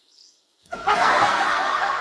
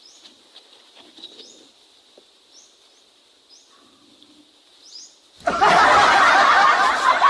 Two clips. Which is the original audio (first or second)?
second